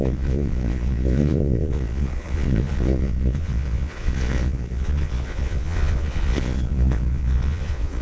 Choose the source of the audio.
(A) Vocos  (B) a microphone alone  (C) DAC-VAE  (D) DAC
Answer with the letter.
A